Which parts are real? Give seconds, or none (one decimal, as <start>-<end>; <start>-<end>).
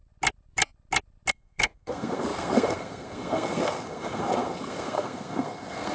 0.0-1.3